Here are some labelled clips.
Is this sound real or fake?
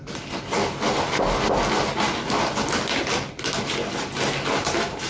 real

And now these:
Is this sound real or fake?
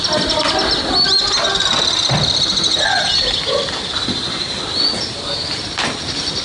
real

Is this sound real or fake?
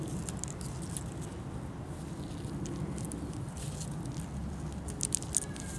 real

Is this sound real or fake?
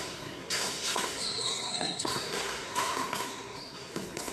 fake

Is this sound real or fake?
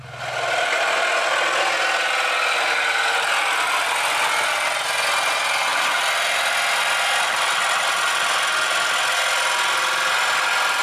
real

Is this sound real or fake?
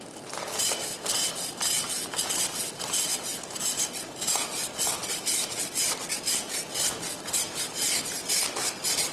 real